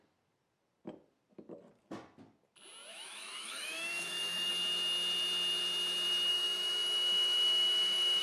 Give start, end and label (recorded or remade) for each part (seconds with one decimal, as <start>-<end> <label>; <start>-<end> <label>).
0.0-2.9 recorded; 2.9-4.5 remade; 4.5-6.3 recorded; 6.3-8.2 remade